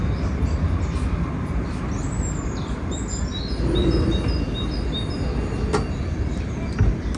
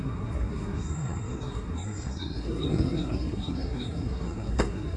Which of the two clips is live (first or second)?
first